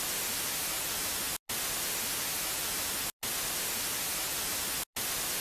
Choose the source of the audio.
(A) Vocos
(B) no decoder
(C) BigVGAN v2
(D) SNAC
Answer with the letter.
B